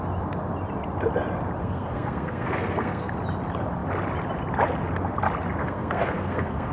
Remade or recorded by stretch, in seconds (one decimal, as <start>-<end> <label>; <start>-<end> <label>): 0.0-1.6 recorded; 1.6-3.1 remade; 3.1-5.6 recorded; 5.6-6.7 remade